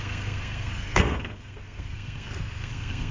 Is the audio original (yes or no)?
no